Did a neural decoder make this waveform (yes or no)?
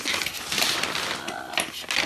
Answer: no